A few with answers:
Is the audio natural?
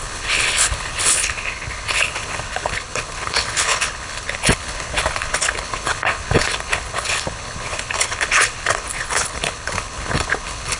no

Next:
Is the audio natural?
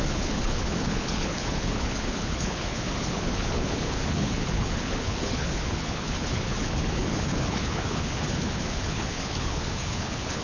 no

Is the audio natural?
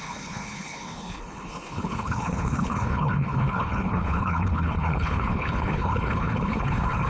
no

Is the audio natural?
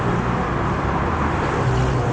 yes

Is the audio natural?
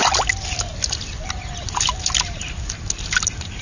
yes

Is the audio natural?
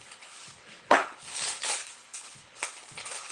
no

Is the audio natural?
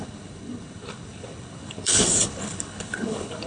no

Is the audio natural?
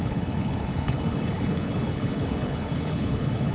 no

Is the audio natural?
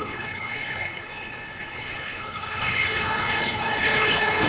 no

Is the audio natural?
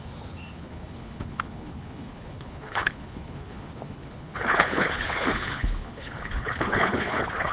no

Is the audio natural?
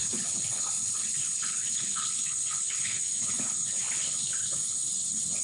no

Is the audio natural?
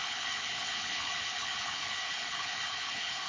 no